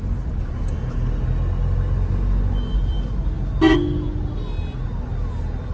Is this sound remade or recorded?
recorded